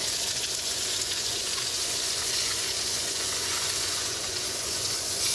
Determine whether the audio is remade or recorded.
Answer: remade